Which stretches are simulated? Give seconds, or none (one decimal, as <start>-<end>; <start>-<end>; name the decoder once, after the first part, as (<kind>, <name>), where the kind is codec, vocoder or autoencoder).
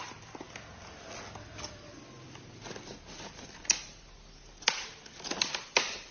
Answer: none